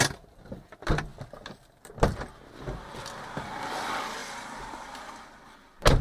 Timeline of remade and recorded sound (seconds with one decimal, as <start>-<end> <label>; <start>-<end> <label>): 0.0-6.0 recorded